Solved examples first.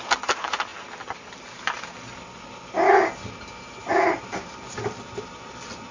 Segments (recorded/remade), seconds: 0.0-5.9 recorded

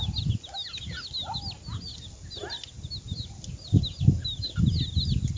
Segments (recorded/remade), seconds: 0.0-5.4 recorded

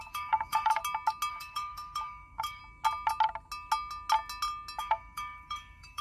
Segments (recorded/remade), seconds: 0.0-0.8 remade; 0.8-1.3 recorded; 1.3-2.6 remade; 2.6-4.8 recorded; 4.8-6.0 remade